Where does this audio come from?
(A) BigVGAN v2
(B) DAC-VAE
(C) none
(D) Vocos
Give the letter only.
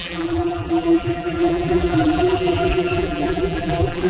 A